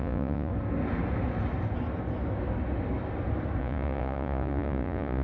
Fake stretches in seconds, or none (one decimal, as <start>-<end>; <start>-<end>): 0.0-0.5; 3.6-5.2